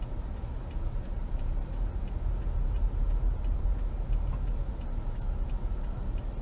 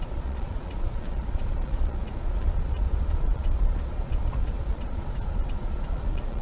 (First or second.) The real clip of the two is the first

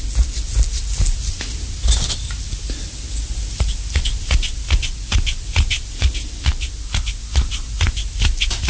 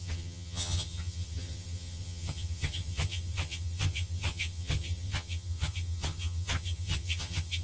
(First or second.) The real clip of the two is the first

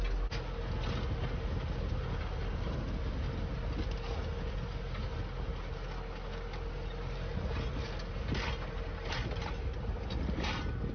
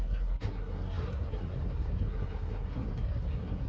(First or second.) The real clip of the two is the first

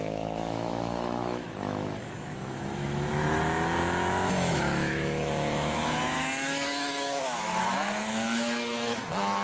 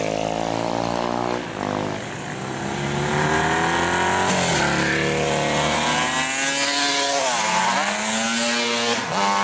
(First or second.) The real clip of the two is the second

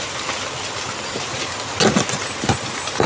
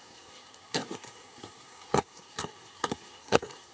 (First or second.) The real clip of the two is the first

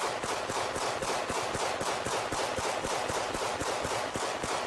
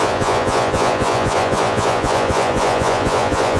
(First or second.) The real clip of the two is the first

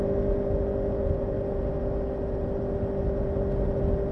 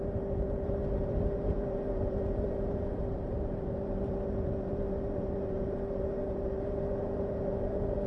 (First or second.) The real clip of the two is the first